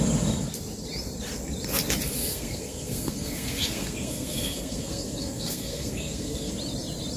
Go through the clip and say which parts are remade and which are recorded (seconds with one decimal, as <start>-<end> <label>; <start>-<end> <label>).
0.0-2.2 recorded; 2.2-6.5 remade; 6.5-7.2 recorded